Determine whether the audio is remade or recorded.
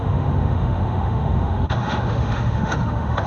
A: remade